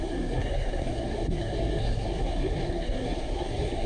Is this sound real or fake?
fake